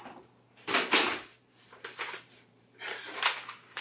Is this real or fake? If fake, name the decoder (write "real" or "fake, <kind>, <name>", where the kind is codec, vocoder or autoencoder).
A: fake, vocoder, BigVGAN v2